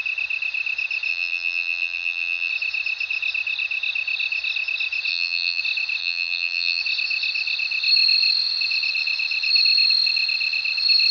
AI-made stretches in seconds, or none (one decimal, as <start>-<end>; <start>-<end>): 1.1-2.5; 5.1-5.6; 6.0-6.8